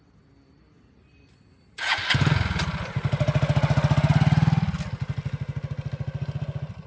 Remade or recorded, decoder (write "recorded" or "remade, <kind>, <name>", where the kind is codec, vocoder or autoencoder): recorded